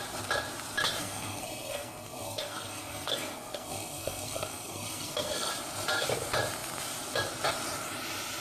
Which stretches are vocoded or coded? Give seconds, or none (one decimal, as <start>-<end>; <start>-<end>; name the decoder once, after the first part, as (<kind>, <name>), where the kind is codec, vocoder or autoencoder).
1.0-5.5 (codec, SNAC)